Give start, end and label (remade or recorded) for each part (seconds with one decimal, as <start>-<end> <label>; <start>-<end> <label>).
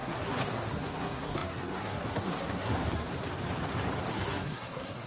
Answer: 0.0-3.1 remade; 3.1-4.1 recorded; 4.1-5.1 remade